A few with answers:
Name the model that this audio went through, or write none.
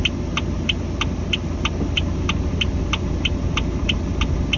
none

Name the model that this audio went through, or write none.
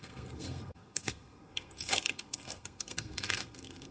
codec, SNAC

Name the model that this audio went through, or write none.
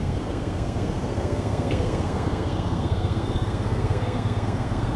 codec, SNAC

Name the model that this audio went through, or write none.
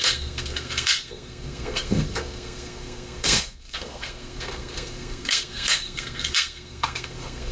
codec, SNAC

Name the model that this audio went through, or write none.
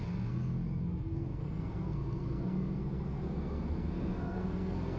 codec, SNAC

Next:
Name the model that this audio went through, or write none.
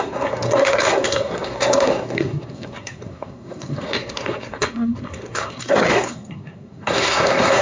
codec, SNAC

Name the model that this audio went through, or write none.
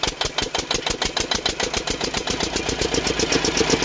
none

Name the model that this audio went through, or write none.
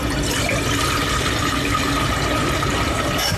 none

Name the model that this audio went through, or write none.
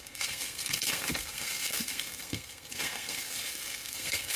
codec, SNAC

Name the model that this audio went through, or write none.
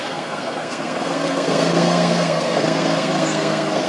codec, SNAC